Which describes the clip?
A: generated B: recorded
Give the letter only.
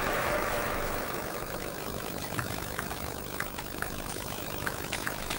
A